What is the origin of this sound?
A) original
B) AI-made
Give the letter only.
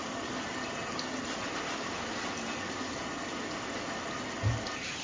A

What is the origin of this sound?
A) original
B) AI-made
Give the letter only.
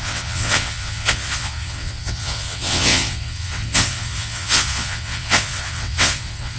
B